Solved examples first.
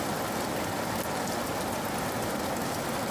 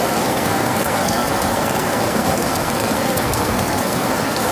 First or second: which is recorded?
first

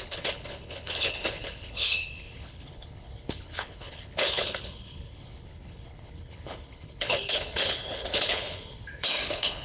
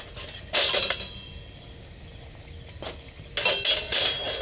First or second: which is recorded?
second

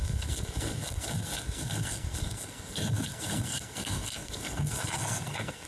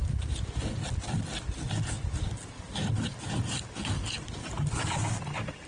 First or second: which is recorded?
second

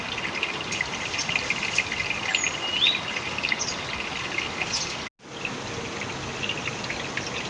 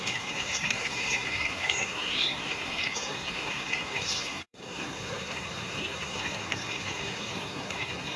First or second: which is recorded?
first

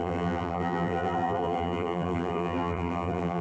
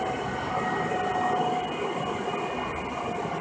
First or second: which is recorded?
second